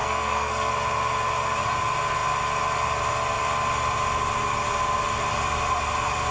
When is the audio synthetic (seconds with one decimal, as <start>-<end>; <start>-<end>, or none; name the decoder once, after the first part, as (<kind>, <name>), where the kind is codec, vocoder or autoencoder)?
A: 0.0-0.7 (codec, SNAC)